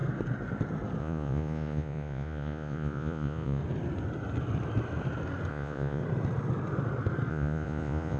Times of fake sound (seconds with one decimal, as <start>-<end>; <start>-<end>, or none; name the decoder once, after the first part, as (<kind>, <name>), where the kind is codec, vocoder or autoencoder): 1.0-3.6 (vocoder, Vocos); 5.5-6.0; 7.3-8.2